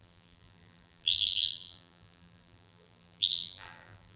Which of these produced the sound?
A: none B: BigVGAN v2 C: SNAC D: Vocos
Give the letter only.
B